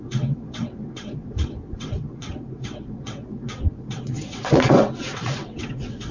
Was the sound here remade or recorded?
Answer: remade